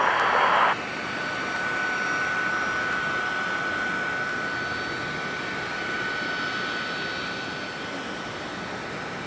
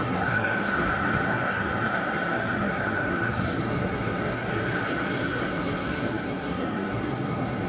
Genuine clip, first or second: first